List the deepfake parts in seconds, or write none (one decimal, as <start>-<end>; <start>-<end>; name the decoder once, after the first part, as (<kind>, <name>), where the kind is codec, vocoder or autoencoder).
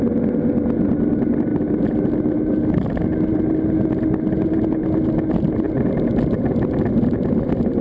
none